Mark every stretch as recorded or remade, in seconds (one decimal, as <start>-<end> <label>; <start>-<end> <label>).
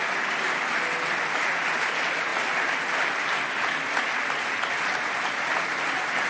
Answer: 0.0-6.3 recorded